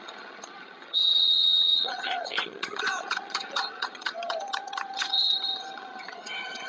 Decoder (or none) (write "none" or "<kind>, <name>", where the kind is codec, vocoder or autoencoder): vocoder, HiFi-GAN